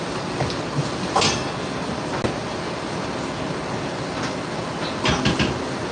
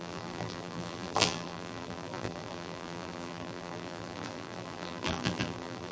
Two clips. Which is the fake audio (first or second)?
second